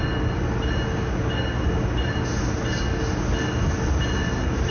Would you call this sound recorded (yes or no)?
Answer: yes